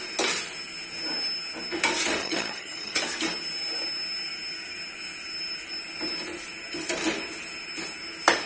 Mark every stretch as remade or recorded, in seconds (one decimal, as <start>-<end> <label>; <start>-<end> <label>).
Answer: 0.0-2.2 recorded; 2.2-3.0 remade; 3.0-8.5 recorded